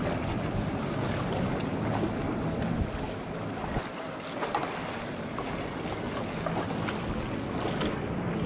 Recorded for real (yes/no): yes